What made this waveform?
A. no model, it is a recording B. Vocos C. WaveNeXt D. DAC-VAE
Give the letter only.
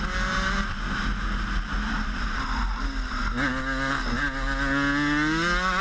A